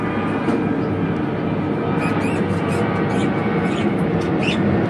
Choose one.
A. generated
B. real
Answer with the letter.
B